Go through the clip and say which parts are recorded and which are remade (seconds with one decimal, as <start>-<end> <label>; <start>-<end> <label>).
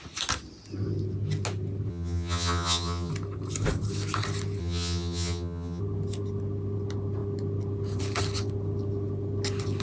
0.0-1.9 recorded; 1.9-3.1 remade; 3.1-4.6 recorded; 4.6-5.8 remade; 5.8-9.8 recorded